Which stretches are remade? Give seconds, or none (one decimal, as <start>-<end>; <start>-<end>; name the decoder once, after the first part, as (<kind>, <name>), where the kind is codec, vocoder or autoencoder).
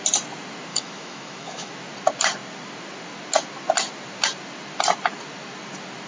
0.7-1.7 (autoencoder, DAC-VAE)